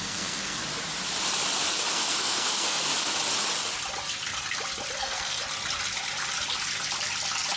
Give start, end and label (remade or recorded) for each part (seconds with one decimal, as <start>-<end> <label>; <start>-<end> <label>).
0.0-0.6 remade; 0.6-1.9 recorded; 1.9-2.9 remade; 2.9-5.0 recorded; 5.0-5.4 remade; 5.4-7.6 recorded